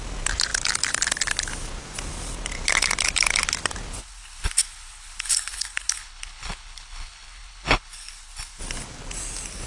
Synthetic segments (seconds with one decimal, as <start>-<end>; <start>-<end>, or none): 4.0-8.6